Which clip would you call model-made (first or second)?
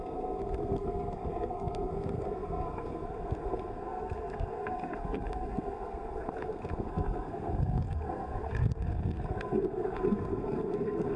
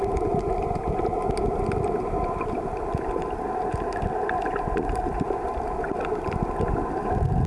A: first